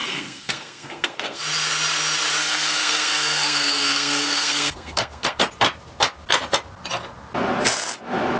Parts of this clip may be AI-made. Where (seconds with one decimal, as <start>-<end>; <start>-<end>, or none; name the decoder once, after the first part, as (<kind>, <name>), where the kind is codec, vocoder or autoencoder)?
0.0-1.4 (codec, SNAC); 2.4-5.4